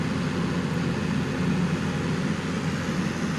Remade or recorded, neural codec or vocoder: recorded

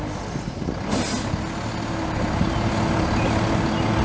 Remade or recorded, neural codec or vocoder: recorded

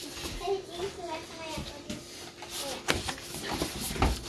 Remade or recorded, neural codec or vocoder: recorded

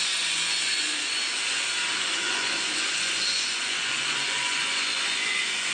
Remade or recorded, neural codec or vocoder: remade, vocoder, Vocos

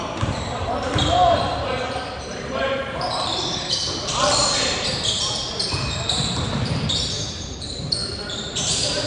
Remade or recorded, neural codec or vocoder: remade, vocoder, BigVGAN v2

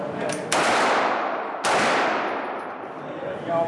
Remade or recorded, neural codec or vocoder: remade, vocoder, BigVGAN v2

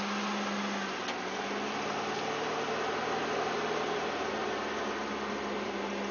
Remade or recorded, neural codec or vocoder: recorded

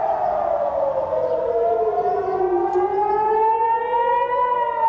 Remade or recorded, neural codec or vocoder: recorded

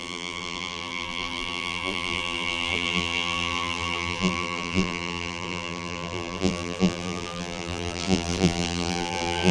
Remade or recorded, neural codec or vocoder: remade, vocoder, BigVGAN v2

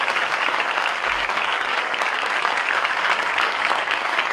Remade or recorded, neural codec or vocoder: remade, codec, DAC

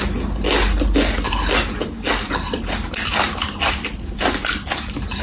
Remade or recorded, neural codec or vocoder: recorded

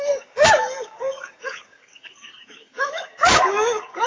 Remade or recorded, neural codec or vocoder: remade, codec, DAC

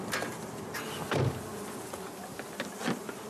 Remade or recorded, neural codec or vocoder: recorded